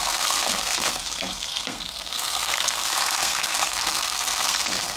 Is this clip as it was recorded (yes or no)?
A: no